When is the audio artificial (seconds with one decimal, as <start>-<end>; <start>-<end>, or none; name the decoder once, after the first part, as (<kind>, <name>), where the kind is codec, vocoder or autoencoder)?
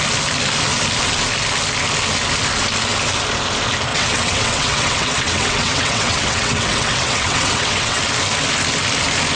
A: 3.9-8.0 (vocoder, WaveNeXt)